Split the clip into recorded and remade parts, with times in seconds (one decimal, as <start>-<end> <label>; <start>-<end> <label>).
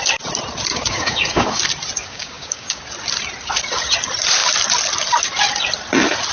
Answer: 0.0-0.7 recorded; 0.7-1.6 remade; 1.6-2.0 recorded; 2.0-2.8 remade; 2.8-6.3 recorded